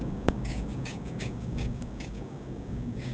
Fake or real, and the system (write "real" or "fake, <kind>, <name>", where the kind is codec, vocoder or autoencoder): fake, codec, DAC